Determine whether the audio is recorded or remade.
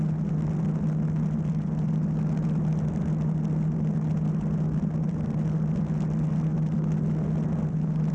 recorded